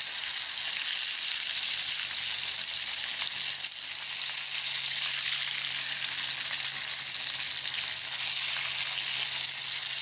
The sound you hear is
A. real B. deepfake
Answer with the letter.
A